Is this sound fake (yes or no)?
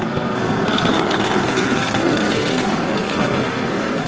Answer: yes